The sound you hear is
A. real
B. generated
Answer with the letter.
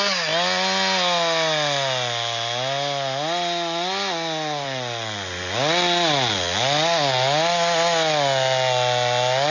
A